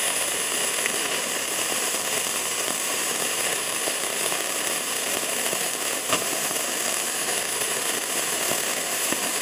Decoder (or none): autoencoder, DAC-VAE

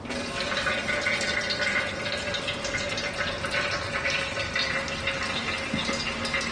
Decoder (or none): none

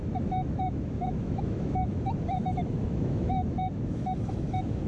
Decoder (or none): autoencoder, DAC-VAE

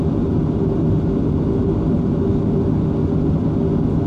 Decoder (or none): none